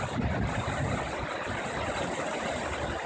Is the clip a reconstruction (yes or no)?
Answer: no